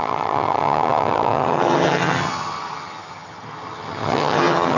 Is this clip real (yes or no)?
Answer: no